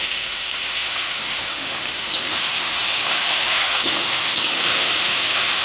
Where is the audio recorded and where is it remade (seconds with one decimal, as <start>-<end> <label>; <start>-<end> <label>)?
0.0-5.6 remade